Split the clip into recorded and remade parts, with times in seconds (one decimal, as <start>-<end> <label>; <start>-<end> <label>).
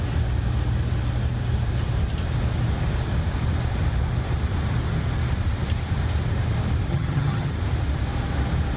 0.0-6.9 recorded; 6.9-7.5 remade; 7.5-8.8 recorded